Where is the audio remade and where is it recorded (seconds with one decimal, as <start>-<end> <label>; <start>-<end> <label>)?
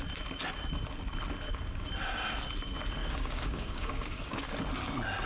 0.0-3.0 recorded; 3.0-4.5 remade; 4.5-5.3 recorded